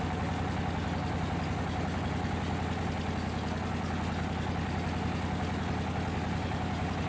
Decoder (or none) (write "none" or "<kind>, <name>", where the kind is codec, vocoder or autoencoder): none